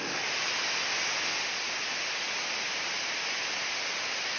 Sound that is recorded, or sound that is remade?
recorded